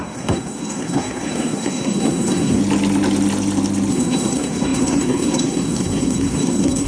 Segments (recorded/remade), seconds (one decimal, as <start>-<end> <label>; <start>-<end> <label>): 0.0-2.6 remade; 2.6-3.9 recorded; 3.9-6.9 remade